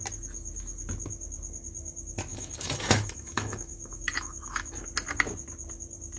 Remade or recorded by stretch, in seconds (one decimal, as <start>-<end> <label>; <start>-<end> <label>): 0.0-2.3 recorded; 2.3-4.7 remade; 4.7-6.2 recorded